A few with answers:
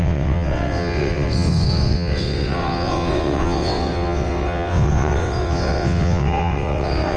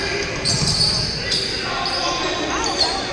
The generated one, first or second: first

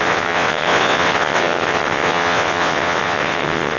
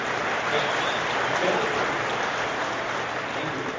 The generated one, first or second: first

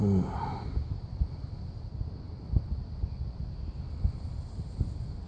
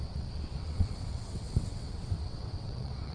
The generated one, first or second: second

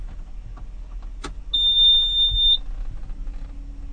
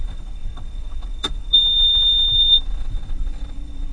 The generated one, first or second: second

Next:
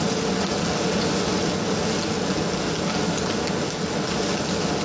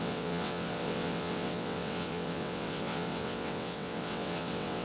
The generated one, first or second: second